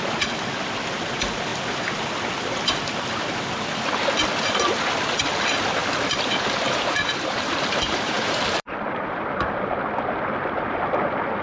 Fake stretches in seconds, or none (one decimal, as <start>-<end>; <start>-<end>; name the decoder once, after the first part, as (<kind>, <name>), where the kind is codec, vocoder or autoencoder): 5.8-9.8 (vocoder, BigVGAN v2)